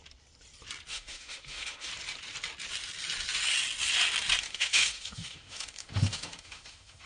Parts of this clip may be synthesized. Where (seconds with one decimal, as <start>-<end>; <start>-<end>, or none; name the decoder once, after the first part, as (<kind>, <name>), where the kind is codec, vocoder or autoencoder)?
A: 0.9-1.9 (autoencoder, DAC-VAE); 4.4-7.1